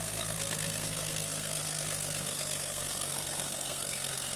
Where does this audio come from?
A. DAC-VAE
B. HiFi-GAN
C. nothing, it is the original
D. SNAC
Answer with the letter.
D